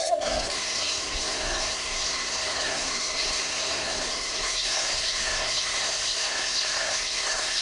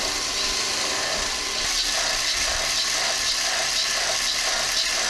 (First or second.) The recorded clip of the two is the second